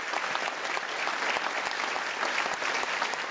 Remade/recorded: remade